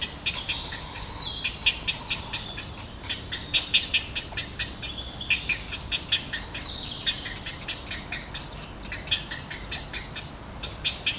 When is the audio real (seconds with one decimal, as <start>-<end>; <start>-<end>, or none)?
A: 0.0-11.2